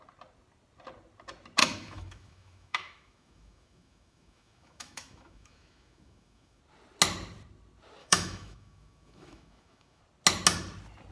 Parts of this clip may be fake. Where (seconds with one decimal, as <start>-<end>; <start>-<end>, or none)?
1.6-6.6; 8.0-10.0